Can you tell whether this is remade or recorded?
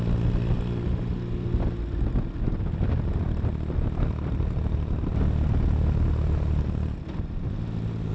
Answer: recorded